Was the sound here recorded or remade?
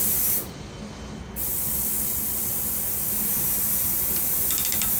recorded